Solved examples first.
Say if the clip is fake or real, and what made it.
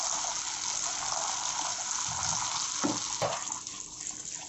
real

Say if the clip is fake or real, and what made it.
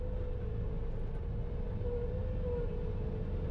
real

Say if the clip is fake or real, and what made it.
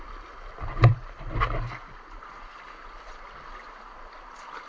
real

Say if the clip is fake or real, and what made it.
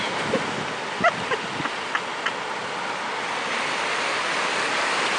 real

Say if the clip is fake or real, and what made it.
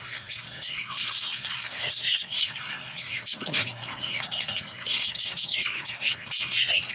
fake, codec, SNAC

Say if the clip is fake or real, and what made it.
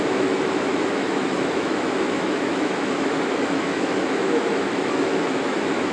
fake, autoencoder, DAC-VAE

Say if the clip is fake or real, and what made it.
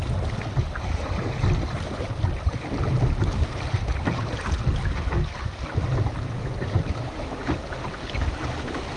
real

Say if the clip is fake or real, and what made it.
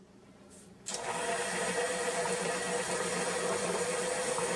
real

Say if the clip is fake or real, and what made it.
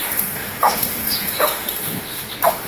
fake, autoencoder, DAC-VAE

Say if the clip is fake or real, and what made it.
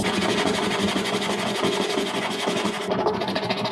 fake, vocoder, Vocos